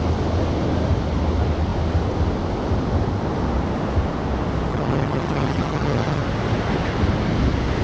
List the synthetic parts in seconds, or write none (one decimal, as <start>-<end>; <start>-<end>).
4.7-6.2